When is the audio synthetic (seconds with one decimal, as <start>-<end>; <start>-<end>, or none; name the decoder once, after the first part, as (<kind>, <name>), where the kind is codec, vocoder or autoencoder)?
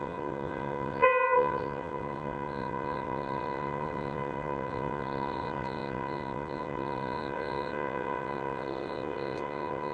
0.0-9.9 (vocoder, WaveNeXt)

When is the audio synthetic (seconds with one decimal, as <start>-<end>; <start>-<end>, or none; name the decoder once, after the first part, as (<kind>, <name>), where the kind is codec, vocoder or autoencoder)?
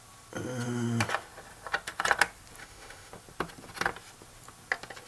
2.6-3.1 (autoencoder, DAC-VAE)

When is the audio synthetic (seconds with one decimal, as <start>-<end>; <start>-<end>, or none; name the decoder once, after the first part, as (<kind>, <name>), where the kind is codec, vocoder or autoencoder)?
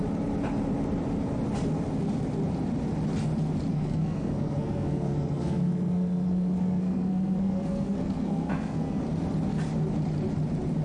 3.7-9.0 (codec, SNAC)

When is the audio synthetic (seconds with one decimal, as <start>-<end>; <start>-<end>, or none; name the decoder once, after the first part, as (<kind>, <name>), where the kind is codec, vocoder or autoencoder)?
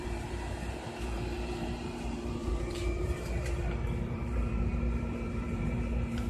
0.0-6.3 (vocoder, BigVGAN v2)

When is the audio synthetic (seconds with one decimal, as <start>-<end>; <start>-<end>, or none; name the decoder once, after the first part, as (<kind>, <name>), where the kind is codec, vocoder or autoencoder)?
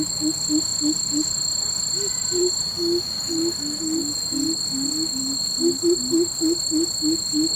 none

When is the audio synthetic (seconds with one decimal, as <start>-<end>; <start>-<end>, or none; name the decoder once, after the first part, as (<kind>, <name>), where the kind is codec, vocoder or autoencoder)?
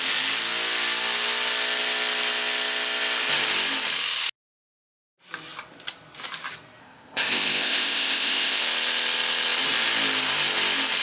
6.8-8.6 (codec, ZipCodec)